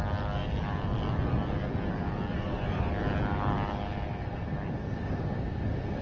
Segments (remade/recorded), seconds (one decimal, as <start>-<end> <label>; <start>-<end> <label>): 0.0-2.3 recorded; 2.3-2.9 remade; 2.9-6.0 recorded